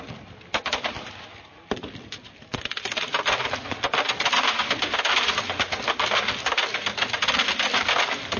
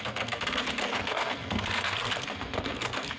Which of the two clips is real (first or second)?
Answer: first